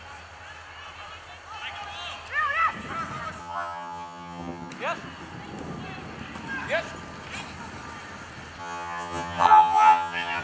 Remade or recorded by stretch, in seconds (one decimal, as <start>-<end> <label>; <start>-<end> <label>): 0.0-3.4 recorded; 3.4-4.7 remade; 4.7-8.6 recorded; 8.6-10.4 remade